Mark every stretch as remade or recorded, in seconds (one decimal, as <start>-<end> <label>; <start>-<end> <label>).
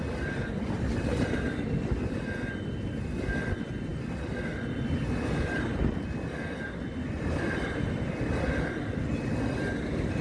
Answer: 0.0-10.2 recorded